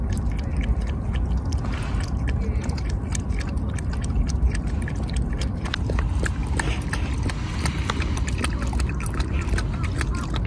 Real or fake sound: real